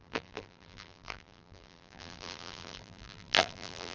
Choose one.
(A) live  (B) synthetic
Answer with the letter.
B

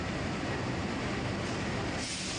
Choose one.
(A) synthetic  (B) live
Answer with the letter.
B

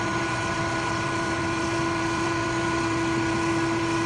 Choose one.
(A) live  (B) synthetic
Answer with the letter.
A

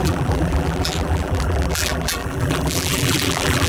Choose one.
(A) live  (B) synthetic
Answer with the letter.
B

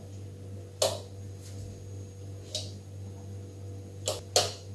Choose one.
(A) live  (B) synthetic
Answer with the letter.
A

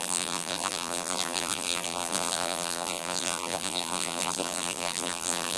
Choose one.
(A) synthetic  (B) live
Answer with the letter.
A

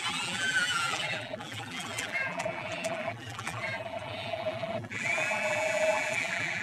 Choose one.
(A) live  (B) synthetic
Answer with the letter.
B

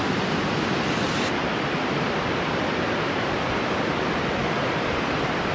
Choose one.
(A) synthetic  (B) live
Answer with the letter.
A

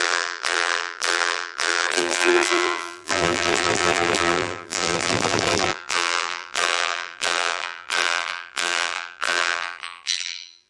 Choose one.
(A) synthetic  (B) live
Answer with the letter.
A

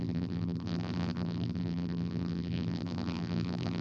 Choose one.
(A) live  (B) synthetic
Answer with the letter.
B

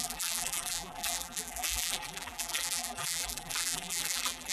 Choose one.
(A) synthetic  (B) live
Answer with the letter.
A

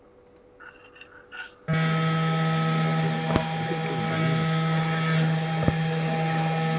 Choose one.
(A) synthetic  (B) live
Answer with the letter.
B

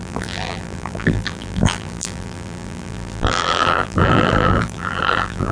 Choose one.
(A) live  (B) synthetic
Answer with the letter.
B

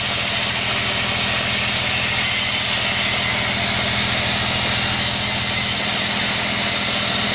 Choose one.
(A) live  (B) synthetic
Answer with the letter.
A